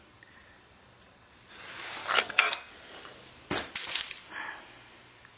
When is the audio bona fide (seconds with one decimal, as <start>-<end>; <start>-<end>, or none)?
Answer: 0.0-2.0; 2.7-5.4